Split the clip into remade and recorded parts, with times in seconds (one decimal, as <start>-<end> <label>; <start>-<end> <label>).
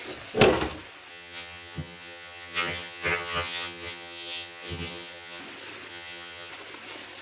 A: 0.0-1.1 recorded; 1.1-5.4 remade; 5.4-5.9 recorded; 5.9-6.5 remade; 6.5-7.2 recorded